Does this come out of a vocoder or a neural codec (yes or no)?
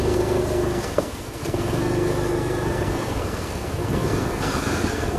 yes